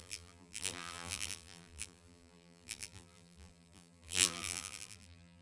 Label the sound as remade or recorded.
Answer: remade